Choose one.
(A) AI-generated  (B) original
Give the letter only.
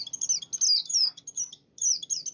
B